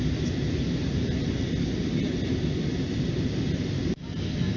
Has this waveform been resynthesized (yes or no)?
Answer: no